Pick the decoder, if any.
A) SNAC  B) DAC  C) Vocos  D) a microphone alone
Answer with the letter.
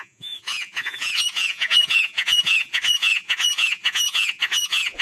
C